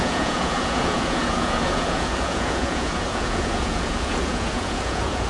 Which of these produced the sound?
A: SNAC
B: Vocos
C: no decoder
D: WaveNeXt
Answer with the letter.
B